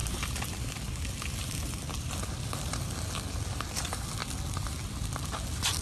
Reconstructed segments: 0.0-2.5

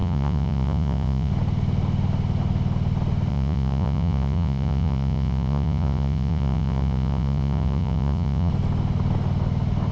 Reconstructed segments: 0.0-1.3; 3.3-8.5

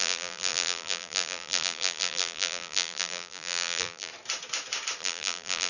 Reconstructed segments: 0.0-4.1; 5.0-5.7

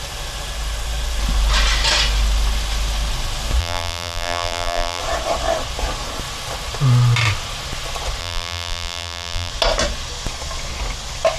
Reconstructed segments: 3.6-5.0; 8.2-9.5